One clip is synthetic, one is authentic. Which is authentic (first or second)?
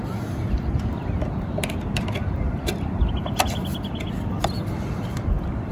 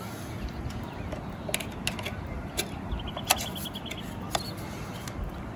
second